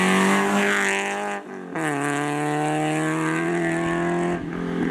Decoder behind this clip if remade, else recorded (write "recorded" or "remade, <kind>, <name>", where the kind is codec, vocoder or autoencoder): recorded